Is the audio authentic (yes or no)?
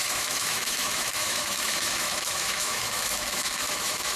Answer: no